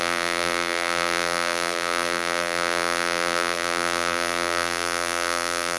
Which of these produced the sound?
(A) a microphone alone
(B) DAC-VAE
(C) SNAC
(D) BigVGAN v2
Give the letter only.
D